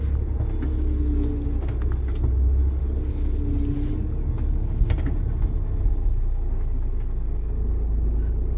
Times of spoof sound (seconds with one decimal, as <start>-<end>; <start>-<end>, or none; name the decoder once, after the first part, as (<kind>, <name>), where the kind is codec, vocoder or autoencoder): 2.8-3.4 (codec, HILCodec)